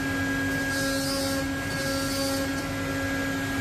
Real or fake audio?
real